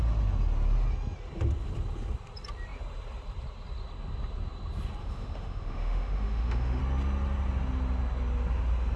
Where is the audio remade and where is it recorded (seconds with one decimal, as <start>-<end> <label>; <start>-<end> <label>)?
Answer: 0.0-5.0 recorded; 5.0-6.8 remade; 6.8-9.0 recorded